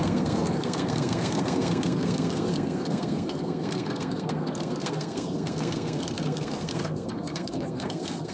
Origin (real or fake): fake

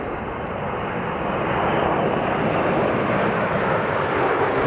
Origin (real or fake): real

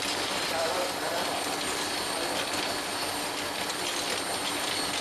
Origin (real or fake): real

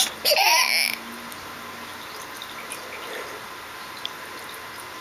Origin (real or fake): real